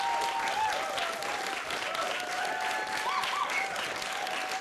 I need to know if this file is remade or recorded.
recorded